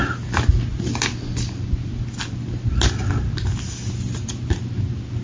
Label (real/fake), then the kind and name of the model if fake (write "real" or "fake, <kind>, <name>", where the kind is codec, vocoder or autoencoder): real